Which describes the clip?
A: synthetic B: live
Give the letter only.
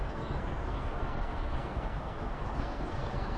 A